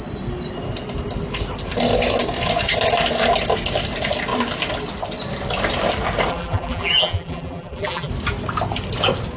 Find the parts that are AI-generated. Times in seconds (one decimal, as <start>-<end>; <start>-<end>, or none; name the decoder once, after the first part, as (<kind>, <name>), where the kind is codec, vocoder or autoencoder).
6.3-8.1 (vocoder, BigVGAN v2)